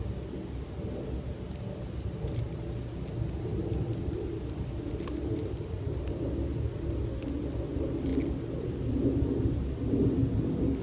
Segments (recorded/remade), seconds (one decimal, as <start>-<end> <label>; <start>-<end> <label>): 0.0-10.8 recorded